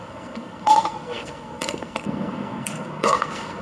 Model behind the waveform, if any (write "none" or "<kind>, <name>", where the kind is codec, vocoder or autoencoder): codec, SNAC